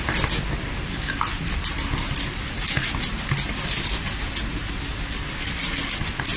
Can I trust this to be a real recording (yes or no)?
yes